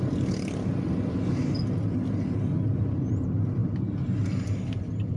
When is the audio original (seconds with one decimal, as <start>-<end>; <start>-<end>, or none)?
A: 0.0-5.2